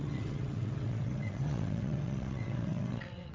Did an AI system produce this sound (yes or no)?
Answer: yes